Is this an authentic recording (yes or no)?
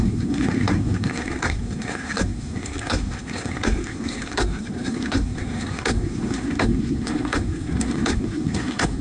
no